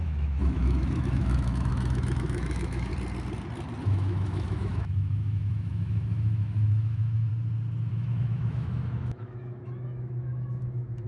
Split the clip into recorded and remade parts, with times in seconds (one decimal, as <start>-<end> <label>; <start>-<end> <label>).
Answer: 0.0-2.9 remade; 2.9-3.8 recorded; 3.8-7.3 remade; 7.3-7.9 recorded; 7.9-11.1 remade